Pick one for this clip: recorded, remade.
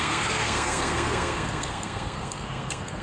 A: remade